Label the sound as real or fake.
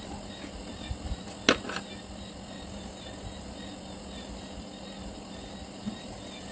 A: real